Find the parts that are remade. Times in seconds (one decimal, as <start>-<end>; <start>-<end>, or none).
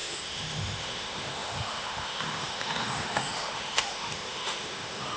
0.0-5.2